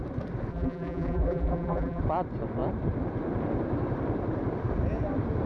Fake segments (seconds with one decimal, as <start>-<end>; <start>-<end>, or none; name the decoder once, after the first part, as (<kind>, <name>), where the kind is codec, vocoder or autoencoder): 0.5-2.0 (vocoder, BigVGAN v2)